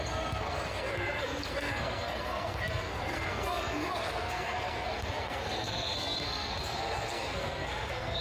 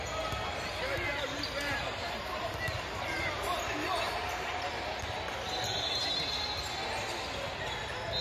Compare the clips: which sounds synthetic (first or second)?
first